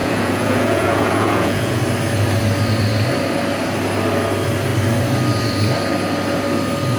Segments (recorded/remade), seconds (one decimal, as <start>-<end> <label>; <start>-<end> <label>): 0.0-1.8 remade; 1.8-7.0 recorded